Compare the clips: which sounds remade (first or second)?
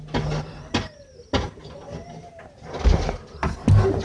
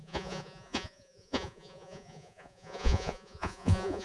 second